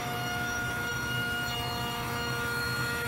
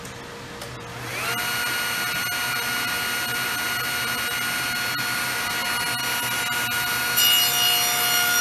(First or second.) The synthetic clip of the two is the first